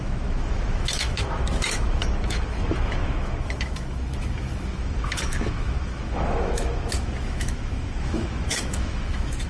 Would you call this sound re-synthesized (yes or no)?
yes